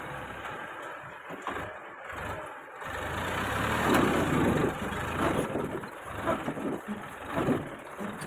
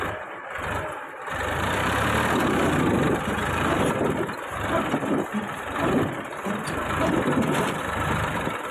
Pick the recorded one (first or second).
first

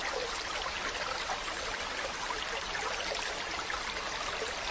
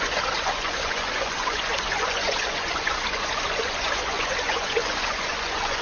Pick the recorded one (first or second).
first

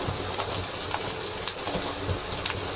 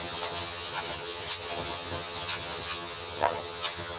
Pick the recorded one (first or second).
first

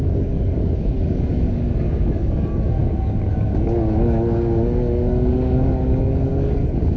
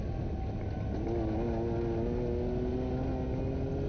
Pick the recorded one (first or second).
second